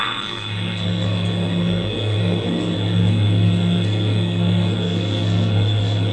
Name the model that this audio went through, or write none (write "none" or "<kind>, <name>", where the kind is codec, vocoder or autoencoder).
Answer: codec, SNAC